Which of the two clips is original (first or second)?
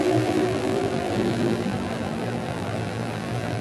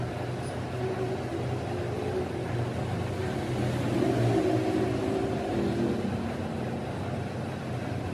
second